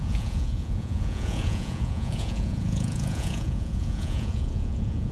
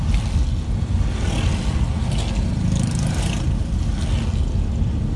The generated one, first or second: first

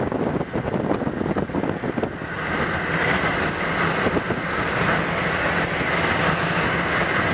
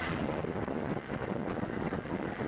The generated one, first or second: second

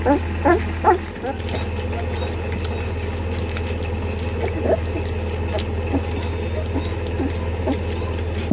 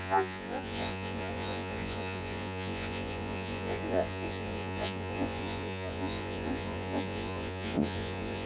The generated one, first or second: second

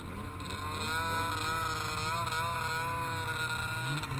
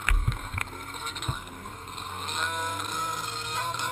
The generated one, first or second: second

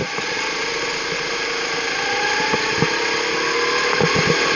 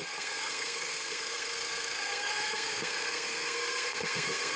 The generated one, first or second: second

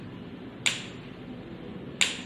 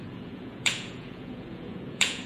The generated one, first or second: second